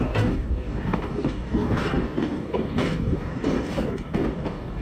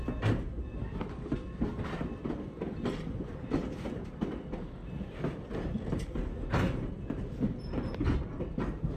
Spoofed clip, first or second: first